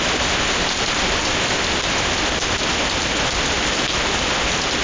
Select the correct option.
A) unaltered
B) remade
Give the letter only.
A